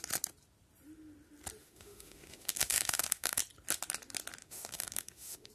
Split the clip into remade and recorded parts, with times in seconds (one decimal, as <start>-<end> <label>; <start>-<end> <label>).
0.0-1.6 recorded; 1.6-3.4 remade; 3.4-4.4 recorded; 4.4-5.5 remade